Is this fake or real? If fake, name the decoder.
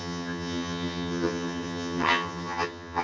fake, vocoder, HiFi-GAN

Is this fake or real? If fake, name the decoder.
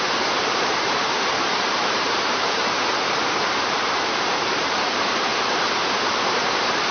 fake, vocoder, BigVGAN v2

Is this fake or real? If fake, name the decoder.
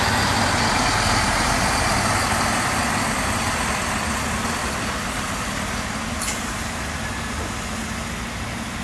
real